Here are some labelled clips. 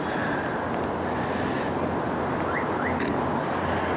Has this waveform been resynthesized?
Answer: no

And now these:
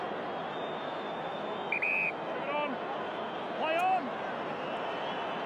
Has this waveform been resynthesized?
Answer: no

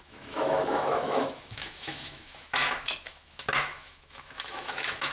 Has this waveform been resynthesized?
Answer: yes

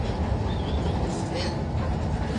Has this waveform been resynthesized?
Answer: no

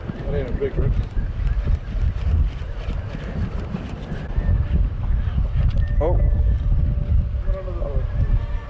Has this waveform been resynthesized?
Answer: no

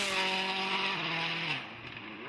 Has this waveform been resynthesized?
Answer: no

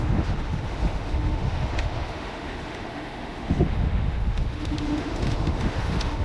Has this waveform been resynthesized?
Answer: yes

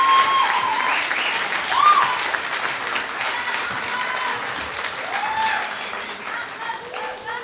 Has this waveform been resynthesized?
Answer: no